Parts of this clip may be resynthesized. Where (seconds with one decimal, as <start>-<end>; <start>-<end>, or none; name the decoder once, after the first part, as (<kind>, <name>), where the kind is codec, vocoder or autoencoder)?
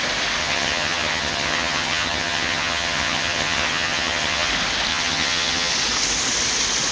0.4-4.5 (vocoder, HiFi-GAN); 4.9-5.7